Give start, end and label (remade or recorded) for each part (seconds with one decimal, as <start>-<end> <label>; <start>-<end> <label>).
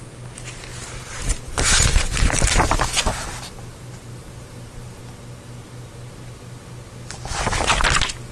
0.0-0.7 recorded; 0.7-5.0 remade; 5.0-8.3 recorded